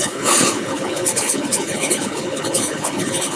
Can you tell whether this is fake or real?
fake